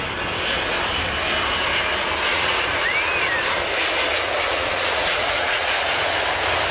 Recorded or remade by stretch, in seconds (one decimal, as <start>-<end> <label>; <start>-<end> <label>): 0.0-2.3 recorded; 2.3-2.9 remade; 2.9-4.5 recorded; 4.5-5.8 remade; 5.8-6.7 recorded